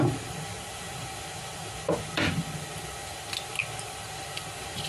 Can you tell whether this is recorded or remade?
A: recorded